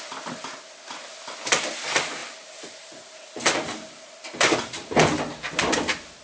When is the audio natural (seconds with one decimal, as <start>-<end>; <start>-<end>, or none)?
0.0-6.2